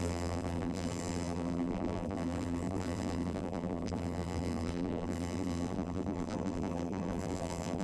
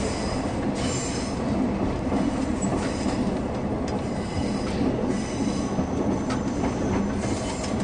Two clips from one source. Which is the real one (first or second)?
second